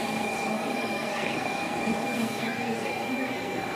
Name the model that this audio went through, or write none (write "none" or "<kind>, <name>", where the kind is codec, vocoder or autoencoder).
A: codec, SNAC